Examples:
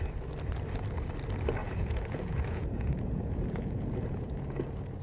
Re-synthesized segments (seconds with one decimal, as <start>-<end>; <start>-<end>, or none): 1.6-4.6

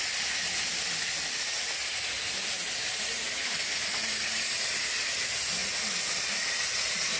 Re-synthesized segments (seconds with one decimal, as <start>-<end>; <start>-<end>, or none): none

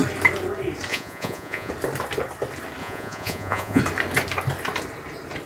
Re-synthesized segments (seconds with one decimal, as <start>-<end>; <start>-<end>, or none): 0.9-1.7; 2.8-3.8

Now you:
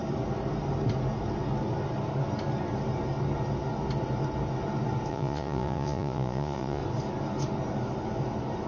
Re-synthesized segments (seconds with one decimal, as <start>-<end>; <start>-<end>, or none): 5.1-6.8

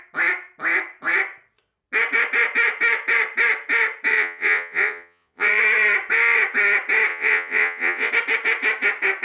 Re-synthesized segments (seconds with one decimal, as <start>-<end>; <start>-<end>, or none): 4.1-5.6; 7.1-8.1

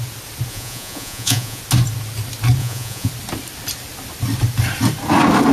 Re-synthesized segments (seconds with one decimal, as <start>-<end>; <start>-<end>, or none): 0.5-1.6; 2.6-3.1

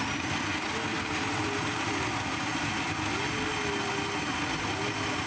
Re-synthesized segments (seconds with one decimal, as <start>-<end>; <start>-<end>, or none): none

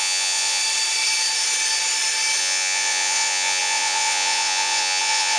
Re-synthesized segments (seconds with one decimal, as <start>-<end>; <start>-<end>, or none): 0.0-0.6; 2.4-5.4